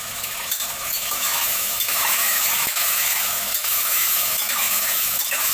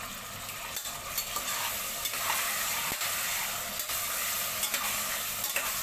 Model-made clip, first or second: first